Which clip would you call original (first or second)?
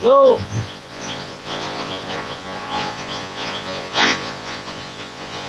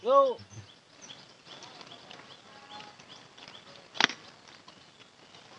second